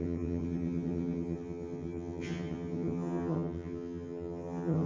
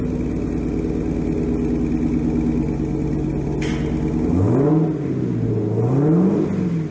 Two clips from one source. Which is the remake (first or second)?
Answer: first